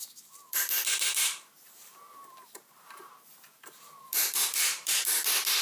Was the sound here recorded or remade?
remade